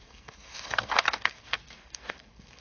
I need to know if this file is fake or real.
fake